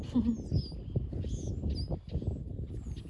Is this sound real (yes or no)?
yes